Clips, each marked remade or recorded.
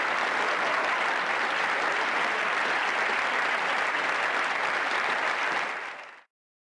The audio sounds recorded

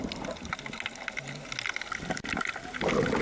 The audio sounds recorded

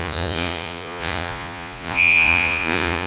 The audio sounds remade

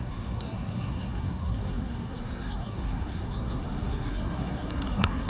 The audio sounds remade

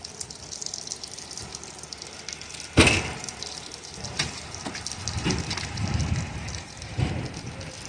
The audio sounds recorded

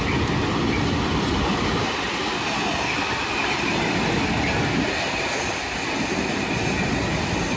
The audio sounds recorded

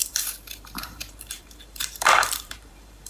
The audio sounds remade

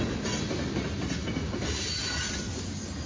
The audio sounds recorded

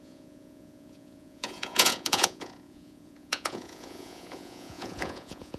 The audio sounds remade